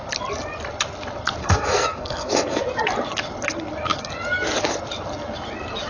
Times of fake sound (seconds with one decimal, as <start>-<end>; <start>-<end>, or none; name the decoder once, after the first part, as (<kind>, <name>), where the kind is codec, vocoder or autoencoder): 1.4-2.6 (codec, SNAC)